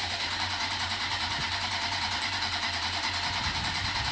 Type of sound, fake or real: fake